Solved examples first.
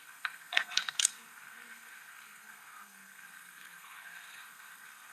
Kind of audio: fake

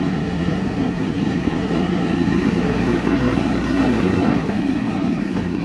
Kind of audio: fake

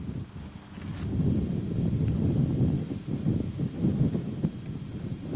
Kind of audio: real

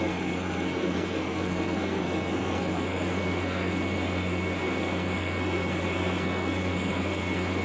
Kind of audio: fake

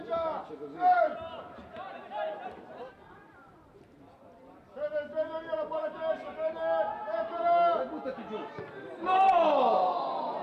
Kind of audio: real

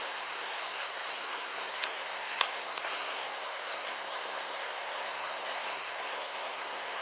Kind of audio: fake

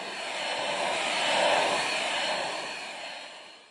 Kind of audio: real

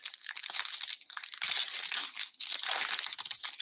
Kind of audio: real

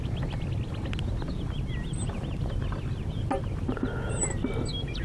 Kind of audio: real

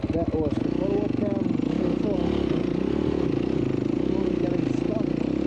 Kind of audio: real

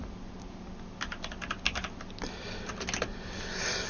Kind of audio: real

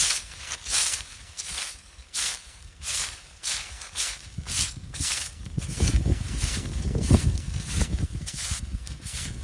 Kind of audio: fake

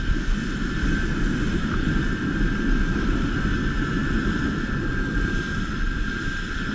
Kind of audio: real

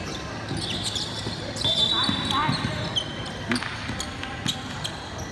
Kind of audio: real